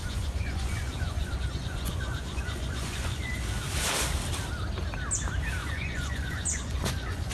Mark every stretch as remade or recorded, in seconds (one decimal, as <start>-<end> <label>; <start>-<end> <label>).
0.0-3.4 remade; 3.4-5.6 recorded; 5.6-7.3 remade